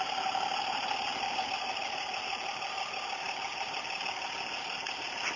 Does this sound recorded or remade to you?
recorded